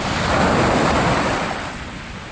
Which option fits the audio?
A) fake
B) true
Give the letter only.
B